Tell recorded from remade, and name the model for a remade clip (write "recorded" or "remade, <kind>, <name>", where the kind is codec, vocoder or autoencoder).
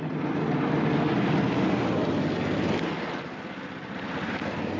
recorded